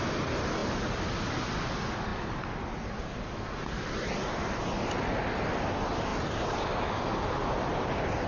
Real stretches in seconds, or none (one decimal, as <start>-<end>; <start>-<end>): 0.0-8.3